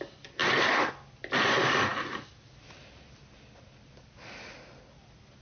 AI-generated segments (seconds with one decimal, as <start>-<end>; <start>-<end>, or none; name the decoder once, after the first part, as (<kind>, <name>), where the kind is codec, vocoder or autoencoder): 0.4-0.9 (vocoder, BigVGAN v2); 1.9-2.8